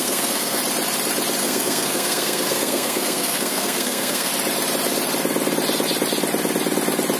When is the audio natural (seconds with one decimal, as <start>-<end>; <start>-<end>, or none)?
0.6-1.4; 4.3-7.2